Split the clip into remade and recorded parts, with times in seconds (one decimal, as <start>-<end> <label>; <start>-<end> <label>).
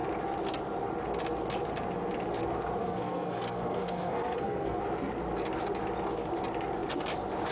0.0-2.8 recorded; 2.8-4.8 remade; 4.8-7.5 recorded